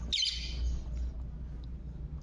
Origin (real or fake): real